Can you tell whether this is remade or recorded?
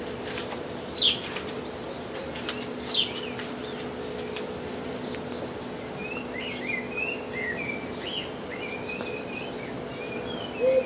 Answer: recorded